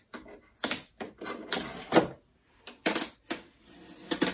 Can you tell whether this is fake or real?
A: real